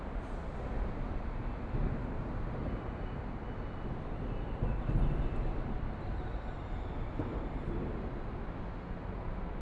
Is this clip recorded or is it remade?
recorded